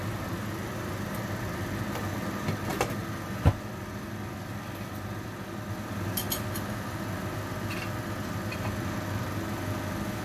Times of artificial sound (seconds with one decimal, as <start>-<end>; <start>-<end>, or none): none